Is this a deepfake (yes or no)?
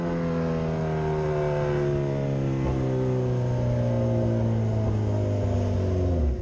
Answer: no